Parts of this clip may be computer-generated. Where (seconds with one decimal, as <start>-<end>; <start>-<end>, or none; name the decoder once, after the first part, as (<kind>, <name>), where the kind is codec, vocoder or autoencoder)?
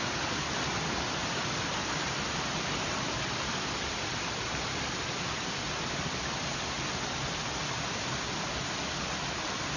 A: 1.2-5.7 (vocoder, BigVGAN v2)